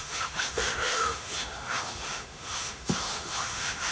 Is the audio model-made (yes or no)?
yes